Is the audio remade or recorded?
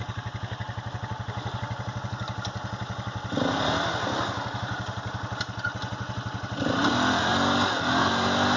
recorded